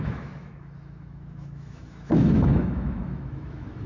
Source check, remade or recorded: remade